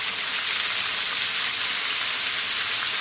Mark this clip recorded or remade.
recorded